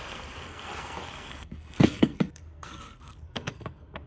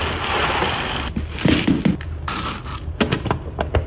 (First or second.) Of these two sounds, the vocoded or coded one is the first